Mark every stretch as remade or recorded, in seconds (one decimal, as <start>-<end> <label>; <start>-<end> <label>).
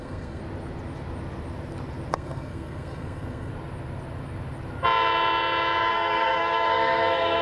0.0-0.4 remade; 0.4-2.1 recorded; 2.1-3.5 remade; 3.5-5.9 recorded; 5.9-7.4 remade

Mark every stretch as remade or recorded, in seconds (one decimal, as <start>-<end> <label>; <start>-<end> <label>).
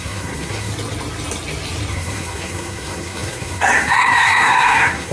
0.0-0.7 remade; 0.7-1.9 recorded; 1.9-5.1 remade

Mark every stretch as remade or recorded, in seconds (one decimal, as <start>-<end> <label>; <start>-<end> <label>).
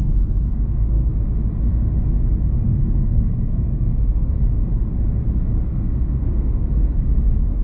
0.0-1.1 remade; 1.1-2.7 recorded; 2.7-4.3 remade; 4.3-5.7 recorded; 5.7-7.6 remade